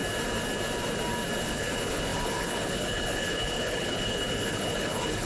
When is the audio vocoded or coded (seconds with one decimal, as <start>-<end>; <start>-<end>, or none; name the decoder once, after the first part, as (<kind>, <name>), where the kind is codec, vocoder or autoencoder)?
1.4-5.3 (codec, HILCodec)